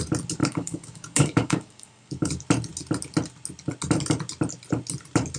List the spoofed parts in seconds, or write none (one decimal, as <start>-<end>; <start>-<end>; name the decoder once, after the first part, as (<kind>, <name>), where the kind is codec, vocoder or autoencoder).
0.4-2.3 (codec, DAC)